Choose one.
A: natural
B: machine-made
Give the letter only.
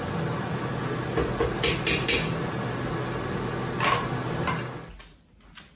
A